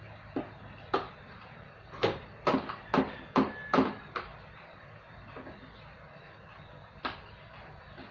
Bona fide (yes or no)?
yes